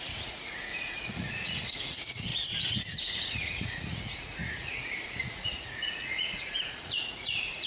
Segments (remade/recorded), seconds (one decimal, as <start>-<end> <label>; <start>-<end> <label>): 0.0-2.3 remade; 2.3-3.0 recorded; 3.0-7.7 remade